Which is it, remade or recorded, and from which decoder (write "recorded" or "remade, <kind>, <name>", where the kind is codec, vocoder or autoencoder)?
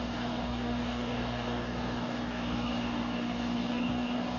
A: remade, codec, DAC